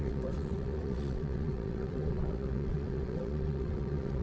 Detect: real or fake fake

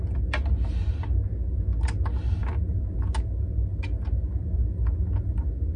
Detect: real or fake real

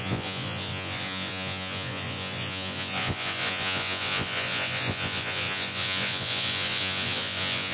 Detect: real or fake fake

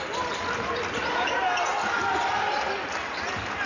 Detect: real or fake real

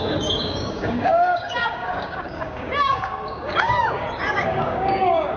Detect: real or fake fake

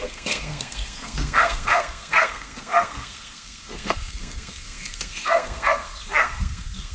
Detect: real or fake fake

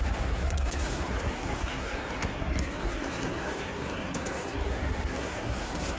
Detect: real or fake fake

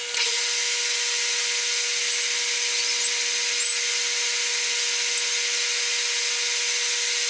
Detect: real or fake real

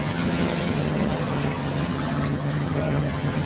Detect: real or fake fake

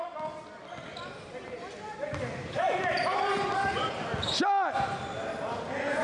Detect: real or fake real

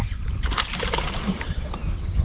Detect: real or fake fake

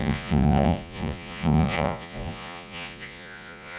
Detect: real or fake fake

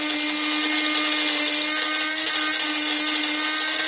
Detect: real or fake real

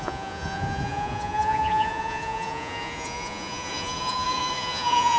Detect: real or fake fake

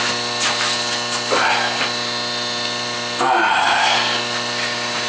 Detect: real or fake real